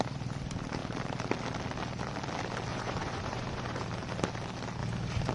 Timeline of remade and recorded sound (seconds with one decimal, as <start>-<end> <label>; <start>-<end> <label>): 0.0-2.7 recorded; 2.7-3.8 remade; 3.8-5.3 recorded